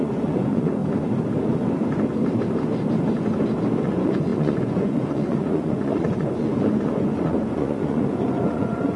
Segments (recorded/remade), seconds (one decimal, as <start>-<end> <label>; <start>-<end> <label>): 0.0-0.8 remade; 0.8-3.8 recorded; 3.8-9.0 remade